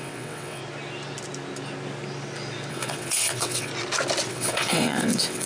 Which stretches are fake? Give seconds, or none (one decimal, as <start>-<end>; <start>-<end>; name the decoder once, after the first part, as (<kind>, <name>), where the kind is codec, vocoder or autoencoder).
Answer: 0.0-0.6 (vocoder, WaveNeXt); 2.7-3.7; 4.3-5.5